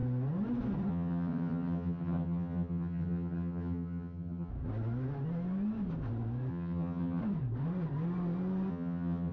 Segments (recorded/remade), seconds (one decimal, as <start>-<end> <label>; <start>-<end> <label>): 0.0-0.9 recorded; 0.9-4.5 remade; 4.5-6.5 recorded; 6.5-7.2 remade; 7.2-8.7 recorded; 8.7-9.3 remade